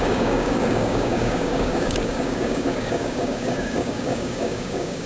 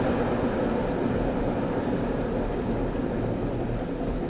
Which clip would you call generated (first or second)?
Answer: first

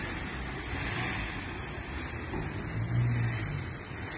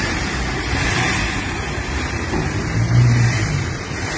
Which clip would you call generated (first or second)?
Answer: second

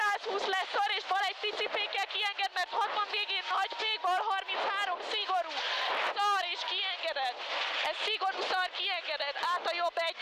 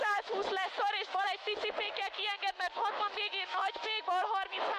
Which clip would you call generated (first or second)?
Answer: second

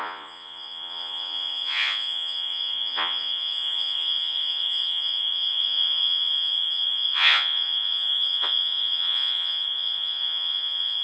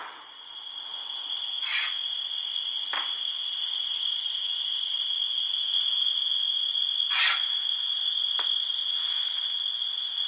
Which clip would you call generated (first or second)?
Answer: first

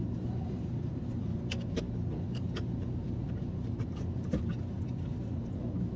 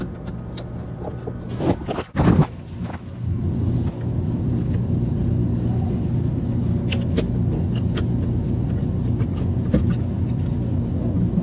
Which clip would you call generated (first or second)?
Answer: first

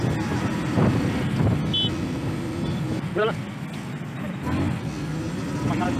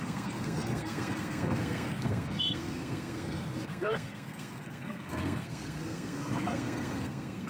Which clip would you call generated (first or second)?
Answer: second